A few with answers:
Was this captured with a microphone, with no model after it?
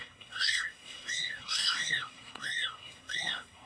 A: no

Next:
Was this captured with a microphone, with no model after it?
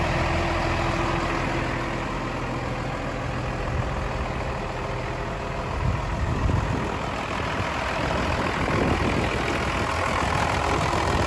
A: yes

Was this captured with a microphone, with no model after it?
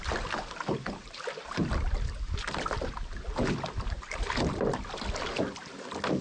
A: yes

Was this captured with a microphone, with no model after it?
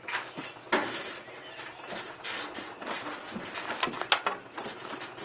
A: yes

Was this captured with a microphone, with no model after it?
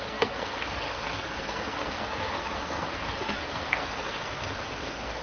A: no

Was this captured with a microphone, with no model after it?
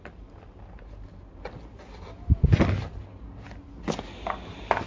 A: yes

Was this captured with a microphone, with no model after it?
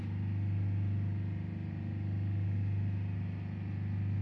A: yes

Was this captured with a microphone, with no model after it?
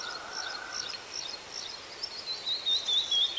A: yes